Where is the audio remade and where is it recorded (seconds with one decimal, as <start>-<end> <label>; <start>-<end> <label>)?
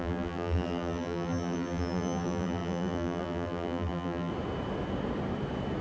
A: 0.0-4.3 remade; 4.3-5.8 recorded